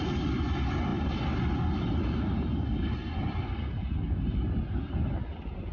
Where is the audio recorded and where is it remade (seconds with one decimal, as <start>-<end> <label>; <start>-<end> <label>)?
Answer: 0.0-5.7 recorded